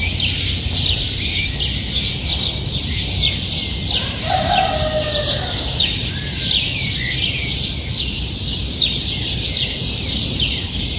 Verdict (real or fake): real